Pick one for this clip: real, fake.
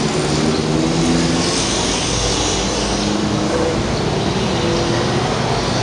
real